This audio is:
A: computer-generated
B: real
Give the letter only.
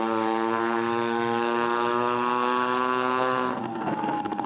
A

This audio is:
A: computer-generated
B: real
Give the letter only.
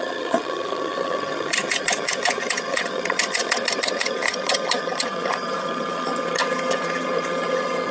A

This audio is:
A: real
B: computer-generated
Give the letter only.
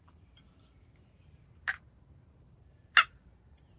B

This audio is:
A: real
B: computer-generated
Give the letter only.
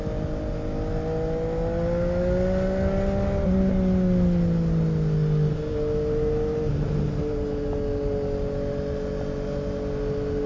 A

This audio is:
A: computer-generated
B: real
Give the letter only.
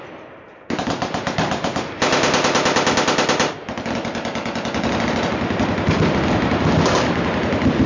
B